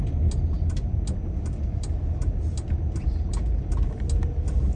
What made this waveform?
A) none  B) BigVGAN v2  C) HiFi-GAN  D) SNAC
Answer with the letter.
A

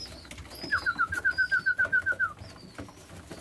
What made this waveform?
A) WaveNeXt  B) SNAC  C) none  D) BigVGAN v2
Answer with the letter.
C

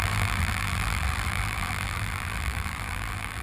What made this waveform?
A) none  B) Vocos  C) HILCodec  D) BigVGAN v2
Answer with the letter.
D